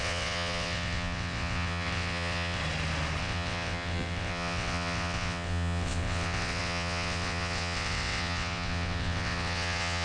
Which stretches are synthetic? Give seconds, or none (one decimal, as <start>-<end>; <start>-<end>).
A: 0.0-2.6; 3.2-10.0